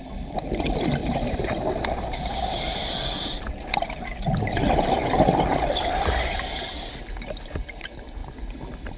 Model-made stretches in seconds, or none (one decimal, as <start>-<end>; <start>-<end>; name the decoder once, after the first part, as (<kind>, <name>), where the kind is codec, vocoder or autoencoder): 1.0-2.1 (vocoder, BigVGAN v2); 8.2-9.0